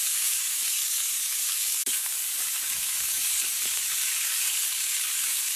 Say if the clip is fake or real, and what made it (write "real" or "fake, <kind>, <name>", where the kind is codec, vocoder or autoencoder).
fake, codec, DAC